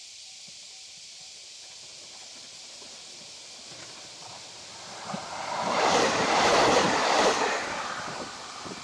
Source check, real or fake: fake